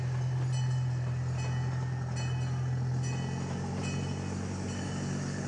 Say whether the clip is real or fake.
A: real